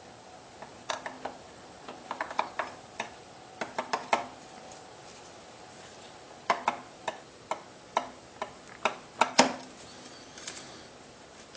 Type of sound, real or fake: real